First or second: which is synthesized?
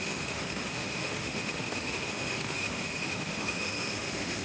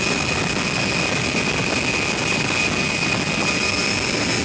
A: first